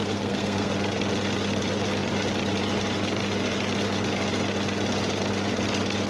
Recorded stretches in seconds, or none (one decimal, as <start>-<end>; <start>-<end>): 0.7-6.1